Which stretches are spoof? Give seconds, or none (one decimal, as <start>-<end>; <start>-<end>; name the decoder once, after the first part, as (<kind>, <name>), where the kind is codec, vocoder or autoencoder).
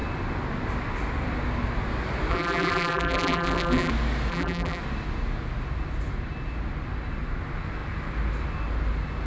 2.3-3.9 (vocoder, BigVGAN v2); 4.3-4.8